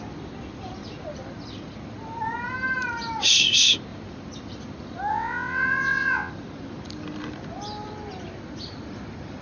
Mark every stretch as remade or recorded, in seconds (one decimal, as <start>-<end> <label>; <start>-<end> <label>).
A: 0.0-5.1 recorded; 5.1-6.3 remade; 6.3-9.4 recorded